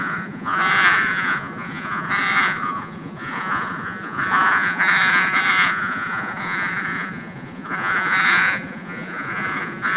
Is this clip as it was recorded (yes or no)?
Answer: no